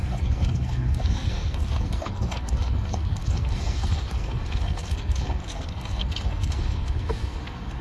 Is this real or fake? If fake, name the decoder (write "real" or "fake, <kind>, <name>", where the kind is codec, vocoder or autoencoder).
fake, codec, SNAC